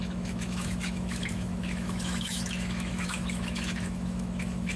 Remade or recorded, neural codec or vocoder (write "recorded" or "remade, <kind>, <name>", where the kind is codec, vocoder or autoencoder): remade, autoencoder, DAC-VAE